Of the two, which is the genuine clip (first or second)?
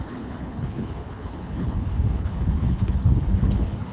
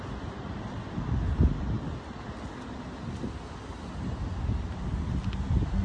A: second